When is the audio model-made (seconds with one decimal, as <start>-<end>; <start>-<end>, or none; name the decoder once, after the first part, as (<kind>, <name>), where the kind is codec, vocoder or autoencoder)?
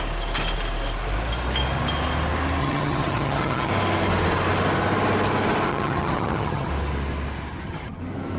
2.6-3.7 (vocoder, HiFi-GAN); 5.7-6.7; 7.5-8.0